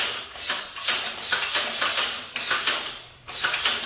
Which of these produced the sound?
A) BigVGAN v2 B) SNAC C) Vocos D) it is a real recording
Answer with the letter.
A